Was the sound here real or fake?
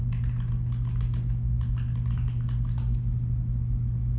real